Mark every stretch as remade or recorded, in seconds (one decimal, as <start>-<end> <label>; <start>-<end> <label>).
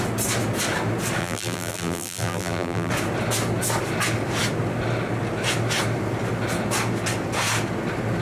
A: 0.0-1.2 recorded; 1.2-2.9 remade; 2.9-8.2 recorded